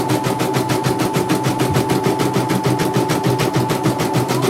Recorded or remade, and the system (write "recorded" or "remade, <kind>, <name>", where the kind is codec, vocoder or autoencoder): recorded